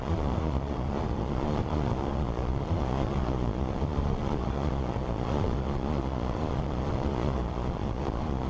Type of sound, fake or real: fake